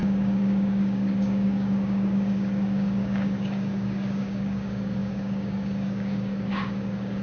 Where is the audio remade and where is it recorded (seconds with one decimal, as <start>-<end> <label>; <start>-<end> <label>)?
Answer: 0.0-7.2 remade